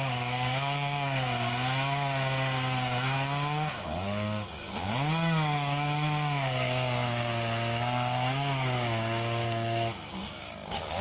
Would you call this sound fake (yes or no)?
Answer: yes